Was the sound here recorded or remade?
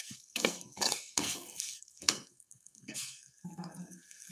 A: remade